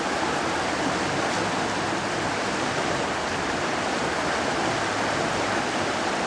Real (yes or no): yes